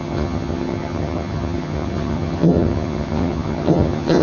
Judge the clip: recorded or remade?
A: remade